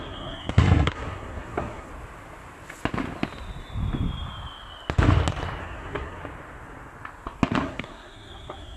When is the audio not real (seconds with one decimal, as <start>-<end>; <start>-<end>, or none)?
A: 0.0-1.9; 5.6-6.2; 7.6-8.8